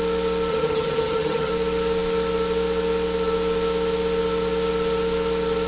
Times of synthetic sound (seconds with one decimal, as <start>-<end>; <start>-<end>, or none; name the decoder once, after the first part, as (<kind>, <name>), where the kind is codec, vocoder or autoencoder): 0.5-1.5 (vocoder, HiFi-GAN)